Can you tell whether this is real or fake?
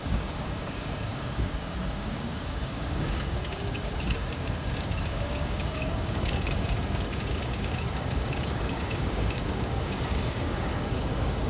fake